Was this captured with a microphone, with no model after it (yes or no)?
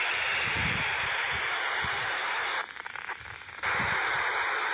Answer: no